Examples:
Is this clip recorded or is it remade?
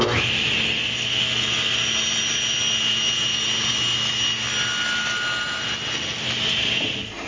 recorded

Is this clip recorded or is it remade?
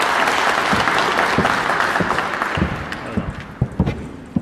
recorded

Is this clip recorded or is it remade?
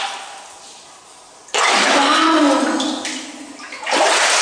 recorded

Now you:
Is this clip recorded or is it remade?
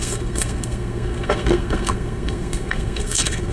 remade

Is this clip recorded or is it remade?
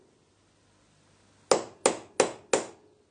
recorded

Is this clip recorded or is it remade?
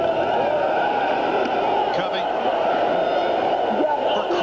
recorded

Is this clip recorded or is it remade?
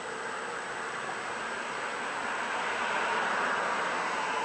recorded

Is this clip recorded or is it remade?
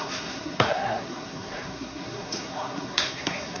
remade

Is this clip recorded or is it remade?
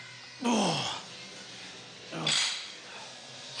recorded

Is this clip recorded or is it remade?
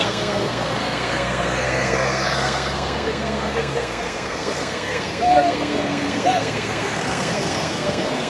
remade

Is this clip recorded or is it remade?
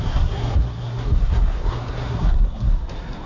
remade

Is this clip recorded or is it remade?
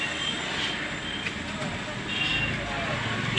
recorded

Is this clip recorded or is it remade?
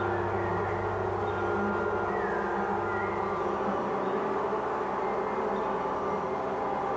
recorded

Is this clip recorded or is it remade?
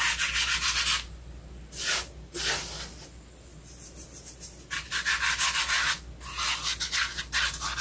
recorded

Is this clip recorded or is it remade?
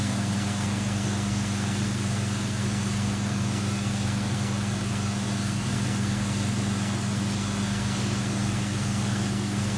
remade